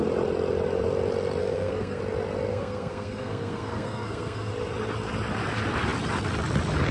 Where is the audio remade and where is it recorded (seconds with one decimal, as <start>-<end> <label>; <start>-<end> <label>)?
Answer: 0.0-1.4 recorded; 1.4-2.0 remade; 2.0-2.5 recorded; 2.5-4.5 remade; 4.5-6.9 recorded